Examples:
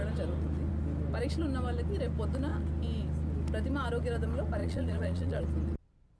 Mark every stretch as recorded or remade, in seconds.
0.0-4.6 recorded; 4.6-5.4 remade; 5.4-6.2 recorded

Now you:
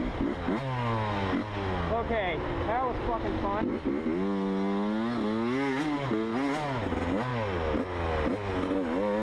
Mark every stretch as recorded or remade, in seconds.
0.0-9.2 recorded

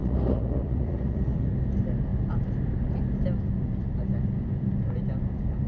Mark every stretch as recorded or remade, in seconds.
0.0-1.5 remade; 1.5-5.7 recorded

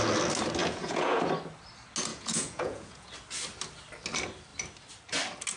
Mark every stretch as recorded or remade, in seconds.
0.0-0.6 recorded; 0.6-1.3 remade; 1.3-2.1 recorded; 2.1-3.1 remade; 3.1-5.6 recorded